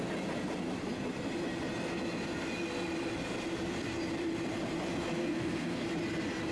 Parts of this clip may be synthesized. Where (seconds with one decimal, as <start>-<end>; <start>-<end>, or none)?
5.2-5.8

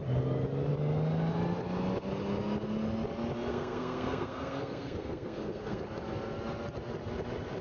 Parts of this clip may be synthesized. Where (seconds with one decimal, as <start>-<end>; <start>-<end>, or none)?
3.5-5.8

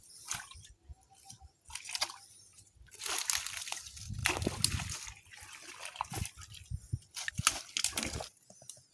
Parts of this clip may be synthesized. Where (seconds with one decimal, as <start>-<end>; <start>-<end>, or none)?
none

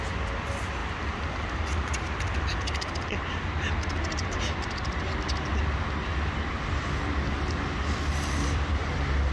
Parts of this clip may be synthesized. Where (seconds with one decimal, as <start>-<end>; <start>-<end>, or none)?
none

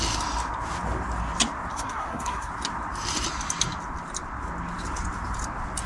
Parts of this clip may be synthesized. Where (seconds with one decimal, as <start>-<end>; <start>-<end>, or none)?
1.7-2.5

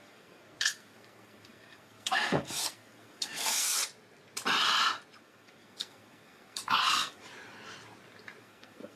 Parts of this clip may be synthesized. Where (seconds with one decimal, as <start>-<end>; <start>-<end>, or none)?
0.0-3.8; 5.2-7.2; 8.4-9.0

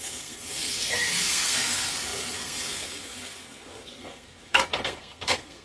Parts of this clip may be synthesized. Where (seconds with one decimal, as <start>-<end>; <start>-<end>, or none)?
0.0-5.6

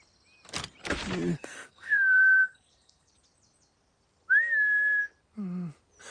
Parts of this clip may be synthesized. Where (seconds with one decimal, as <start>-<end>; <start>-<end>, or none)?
1.3-3.1